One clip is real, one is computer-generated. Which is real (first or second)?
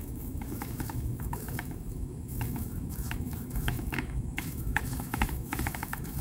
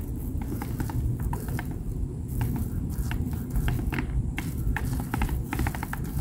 second